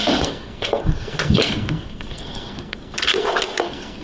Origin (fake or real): fake